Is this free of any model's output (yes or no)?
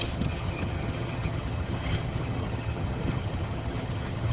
no